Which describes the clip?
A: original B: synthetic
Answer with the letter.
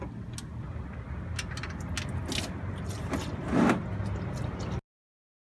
A